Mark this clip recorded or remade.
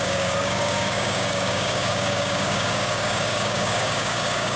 remade